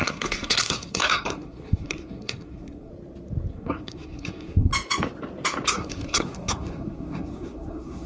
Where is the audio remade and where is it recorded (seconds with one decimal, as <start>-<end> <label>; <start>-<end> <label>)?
0.0-2.9 remade; 2.9-3.5 recorded; 3.5-4.7 remade; 4.7-5.7 recorded; 5.7-8.1 remade